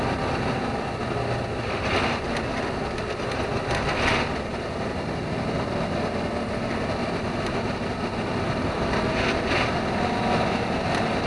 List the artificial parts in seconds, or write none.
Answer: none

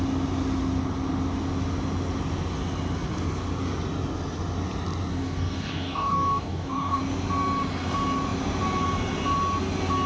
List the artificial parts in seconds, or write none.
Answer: 5.1-7.0 (codec, DAC)

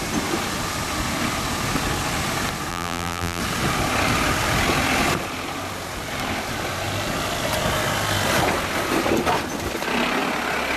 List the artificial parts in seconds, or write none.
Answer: 2.7-3.4 (vocoder, BigVGAN v2)